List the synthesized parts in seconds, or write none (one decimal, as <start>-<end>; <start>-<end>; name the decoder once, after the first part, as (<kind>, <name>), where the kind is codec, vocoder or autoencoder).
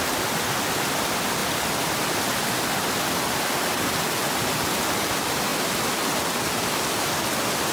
none